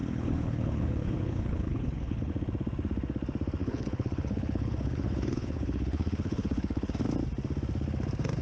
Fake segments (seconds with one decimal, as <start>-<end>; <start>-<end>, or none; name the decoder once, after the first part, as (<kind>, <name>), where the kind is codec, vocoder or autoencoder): 0.0-2.3 (codec, HILCodec); 3.6-6.9